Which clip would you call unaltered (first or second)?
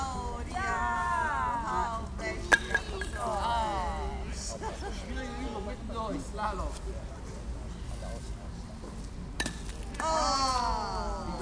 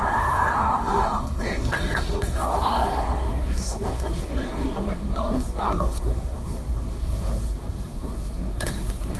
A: first